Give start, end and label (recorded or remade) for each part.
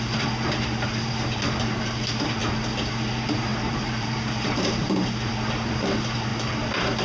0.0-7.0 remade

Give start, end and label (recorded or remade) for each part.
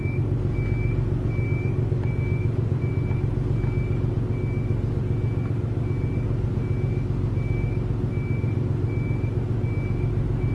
0.0-10.5 recorded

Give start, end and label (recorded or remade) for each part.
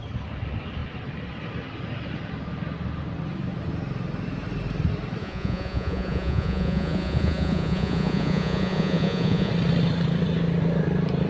0.0-5.2 recorded; 5.2-9.5 remade; 9.5-11.3 recorded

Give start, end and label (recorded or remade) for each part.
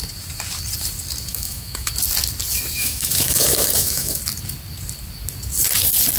0.0-1.3 recorded; 1.3-1.9 remade; 1.9-2.8 recorded; 2.8-4.2 remade; 4.2-6.2 recorded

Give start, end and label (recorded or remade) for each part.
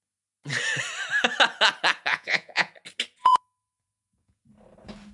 0.0-2.1 recorded; 2.1-2.7 remade; 2.7-3.2 recorded; 3.2-4.4 remade; 4.4-5.1 recorded